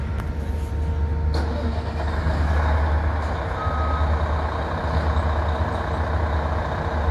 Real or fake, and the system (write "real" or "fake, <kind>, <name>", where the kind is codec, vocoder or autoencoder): real